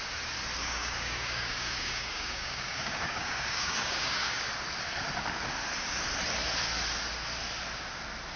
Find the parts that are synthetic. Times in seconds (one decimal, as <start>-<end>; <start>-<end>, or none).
0.6-4.4